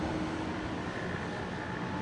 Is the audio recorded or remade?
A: recorded